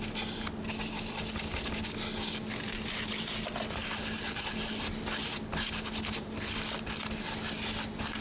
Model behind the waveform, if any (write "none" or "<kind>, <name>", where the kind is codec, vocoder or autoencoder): none